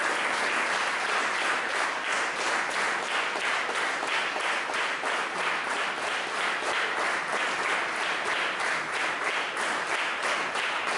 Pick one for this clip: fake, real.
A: real